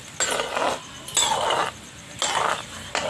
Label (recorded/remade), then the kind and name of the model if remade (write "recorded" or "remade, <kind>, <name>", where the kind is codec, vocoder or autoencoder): recorded